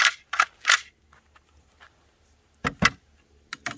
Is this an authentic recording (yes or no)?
yes